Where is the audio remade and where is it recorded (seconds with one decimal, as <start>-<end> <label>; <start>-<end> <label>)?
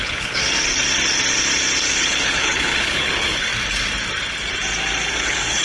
0.0-0.4 remade; 0.4-2.0 recorded; 2.0-3.5 remade; 3.5-5.1 recorded; 5.1-5.6 remade